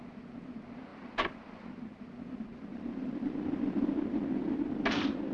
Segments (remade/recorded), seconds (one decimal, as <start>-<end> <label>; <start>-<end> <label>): 0.0-5.3 recorded